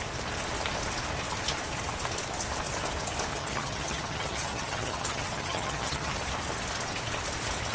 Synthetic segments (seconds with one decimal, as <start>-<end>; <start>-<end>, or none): 3.3-6.1